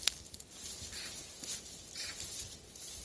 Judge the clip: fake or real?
real